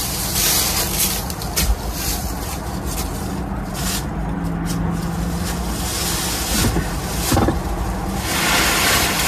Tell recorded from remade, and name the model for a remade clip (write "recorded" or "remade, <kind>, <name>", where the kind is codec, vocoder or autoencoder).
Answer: recorded